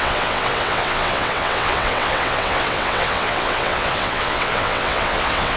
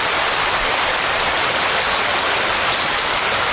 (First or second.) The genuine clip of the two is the second